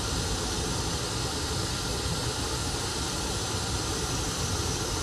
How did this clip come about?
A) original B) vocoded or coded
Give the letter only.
B